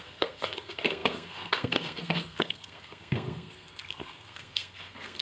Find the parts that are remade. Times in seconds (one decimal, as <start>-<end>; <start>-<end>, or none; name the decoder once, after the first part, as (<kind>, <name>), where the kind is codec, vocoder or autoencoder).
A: 0.0-5.2 (codec, SNAC)